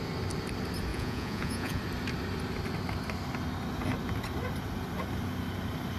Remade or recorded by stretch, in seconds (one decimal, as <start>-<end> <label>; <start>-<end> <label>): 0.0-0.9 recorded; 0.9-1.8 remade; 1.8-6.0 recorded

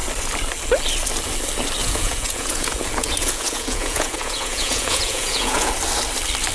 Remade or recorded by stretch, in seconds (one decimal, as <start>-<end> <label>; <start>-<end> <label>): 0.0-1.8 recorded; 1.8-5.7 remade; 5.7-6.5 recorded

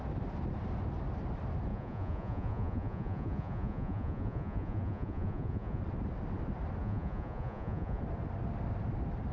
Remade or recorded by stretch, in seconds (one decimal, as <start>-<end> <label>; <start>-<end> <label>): 0.0-1.7 recorded; 1.7-5.8 remade; 5.8-6.8 recorded; 6.8-8.0 remade; 8.0-9.3 recorded

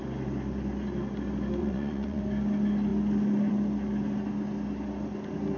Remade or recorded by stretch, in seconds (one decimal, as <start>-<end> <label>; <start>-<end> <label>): 0.0-1.6 recorded; 1.6-2.2 remade; 2.2-5.6 recorded

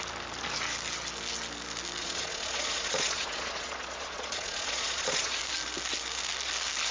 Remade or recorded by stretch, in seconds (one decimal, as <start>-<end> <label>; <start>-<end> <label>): 0.0-2.0 recorded; 2.0-5.4 remade; 5.4-6.9 recorded